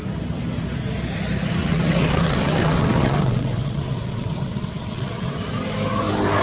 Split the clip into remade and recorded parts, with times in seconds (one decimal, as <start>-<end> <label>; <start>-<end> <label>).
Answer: 0.0-1.6 recorded; 1.6-5.4 remade; 5.4-6.4 recorded